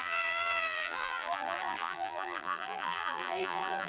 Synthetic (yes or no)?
yes